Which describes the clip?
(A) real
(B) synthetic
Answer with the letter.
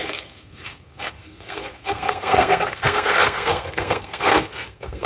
B